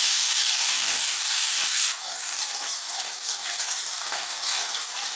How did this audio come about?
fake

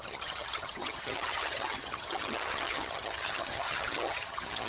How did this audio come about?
fake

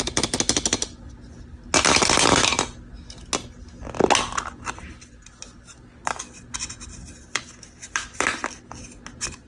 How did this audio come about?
real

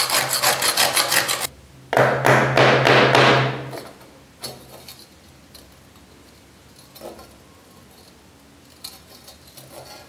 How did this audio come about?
real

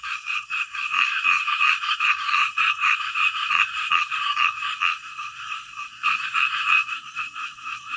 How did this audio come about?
fake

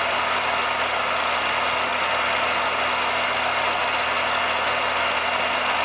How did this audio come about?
real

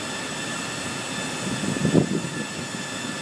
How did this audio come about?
real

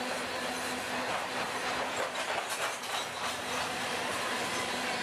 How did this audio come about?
real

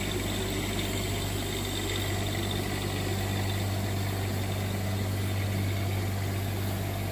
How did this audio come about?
real